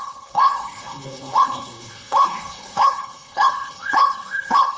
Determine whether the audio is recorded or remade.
remade